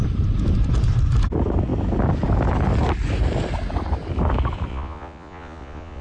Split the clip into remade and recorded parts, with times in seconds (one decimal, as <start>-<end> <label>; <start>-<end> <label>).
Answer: 0.0-4.7 recorded; 4.7-6.0 remade

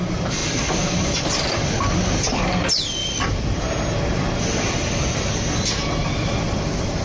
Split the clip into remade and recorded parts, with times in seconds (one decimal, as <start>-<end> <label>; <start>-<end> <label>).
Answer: 0.0-0.4 recorded; 0.4-2.6 remade; 2.6-3.0 recorded; 3.0-5.0 remade; 5.0-6.0 recorded; 6.0-7.0 remade

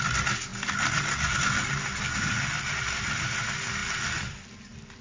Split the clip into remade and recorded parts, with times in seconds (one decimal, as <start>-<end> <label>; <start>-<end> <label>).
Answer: 0.0-5.0 recorded

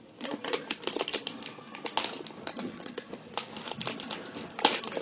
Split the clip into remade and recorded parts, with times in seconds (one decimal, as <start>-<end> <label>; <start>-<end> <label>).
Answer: 0.0-2.5 recorded; 2.5-3.1 remade; 3.1-5.0 recorded

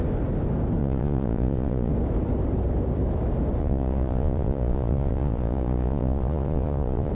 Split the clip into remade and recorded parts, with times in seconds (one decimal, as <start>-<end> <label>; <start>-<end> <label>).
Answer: 0.0-0.8 recorded; 0.8-1.9 remade; 1.9-3.6 recorded; 3.6-7.1 remade

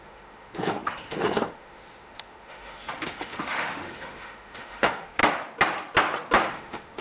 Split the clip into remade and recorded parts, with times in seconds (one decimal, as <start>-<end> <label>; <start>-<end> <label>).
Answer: 0.0-5.2 remade; 5.2-6.5 recorded; 6.5-7.0 remade

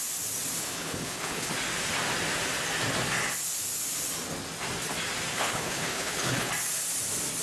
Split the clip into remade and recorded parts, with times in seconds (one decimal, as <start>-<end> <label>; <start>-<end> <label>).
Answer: 0.0-0.6 recorded; 0.6-1.5 remade; 1.5-5.3 recorded; 5.3-6.5 remade; 6.5-7.4 recorded